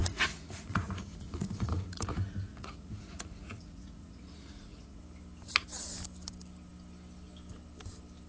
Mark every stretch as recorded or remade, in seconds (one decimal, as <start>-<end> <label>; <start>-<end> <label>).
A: 0.0-5.0 remade; 5.0-8.3 recorded